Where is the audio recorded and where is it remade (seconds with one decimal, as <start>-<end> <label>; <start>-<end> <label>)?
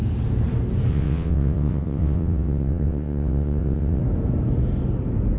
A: 0.0-0.9 recorded; 0.9-4.0 remade; 4.0-5.4 recorded